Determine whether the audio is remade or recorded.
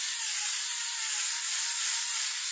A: remade